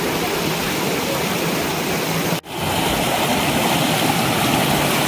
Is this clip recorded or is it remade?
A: recorded